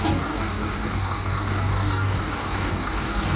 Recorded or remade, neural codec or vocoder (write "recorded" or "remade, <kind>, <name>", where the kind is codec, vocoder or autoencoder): remade, codec, DAC